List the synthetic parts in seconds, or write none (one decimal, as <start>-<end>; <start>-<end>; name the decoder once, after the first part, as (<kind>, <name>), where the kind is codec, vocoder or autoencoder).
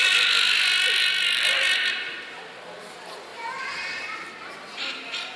3.3-4.3 (vocoder, BigVGAN v2)